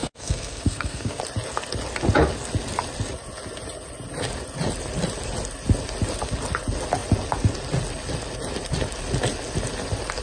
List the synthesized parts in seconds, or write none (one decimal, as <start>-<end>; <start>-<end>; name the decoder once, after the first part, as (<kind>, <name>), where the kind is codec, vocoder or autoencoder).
0.0-1.2 (codec, SNAC)